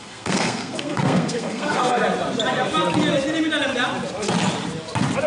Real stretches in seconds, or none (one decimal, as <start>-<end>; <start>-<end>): 2.0-5.3